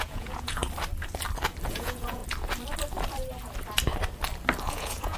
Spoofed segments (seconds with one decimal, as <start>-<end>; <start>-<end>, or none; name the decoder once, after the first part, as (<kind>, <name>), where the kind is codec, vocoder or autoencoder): 0.0-0.6 (vocoder, Vocos); 1.7-2.2; 4.6-5.2